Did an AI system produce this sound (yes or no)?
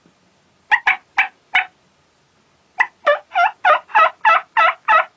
no